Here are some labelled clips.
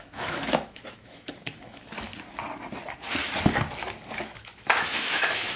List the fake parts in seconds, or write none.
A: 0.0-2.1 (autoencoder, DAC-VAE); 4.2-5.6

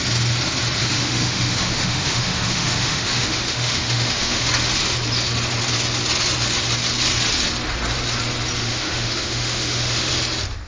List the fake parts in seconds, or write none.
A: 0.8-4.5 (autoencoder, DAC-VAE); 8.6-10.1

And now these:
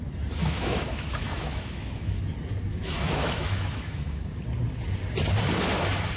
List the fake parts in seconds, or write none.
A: 0.4-2.2 (autoencoder, DAC-VAE); 2.7-4.2

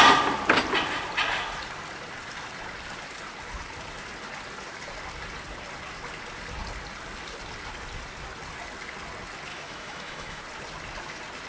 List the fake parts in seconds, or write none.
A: 9.5-10.4 (autoencoder, DAC-VAE)

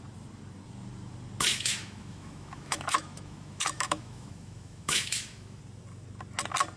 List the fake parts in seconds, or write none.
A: 1.5-5.6 (autoencoder, DAC-VAE)

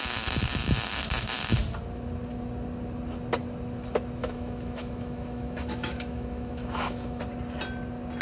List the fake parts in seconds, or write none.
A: 4.2-7.2 (autoencoder, DAC-VAE)

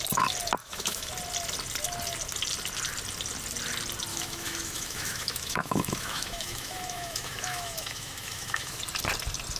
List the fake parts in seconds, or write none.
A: 0.6-1.1 (autoencoder, DAC-VAE); 4.1-8.8

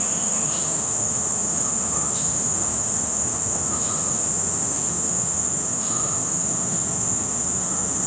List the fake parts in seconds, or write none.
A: 0.0-8.1 (autoencoder, DAC-VAE)